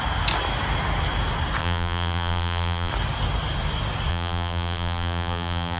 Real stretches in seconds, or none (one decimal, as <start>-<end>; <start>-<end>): 0.0-1.6; 2.9-4.1